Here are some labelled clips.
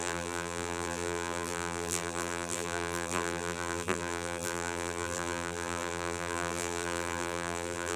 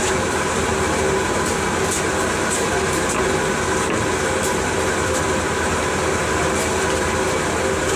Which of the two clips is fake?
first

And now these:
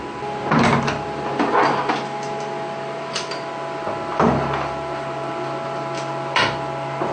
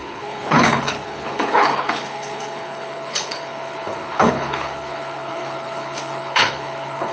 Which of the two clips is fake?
second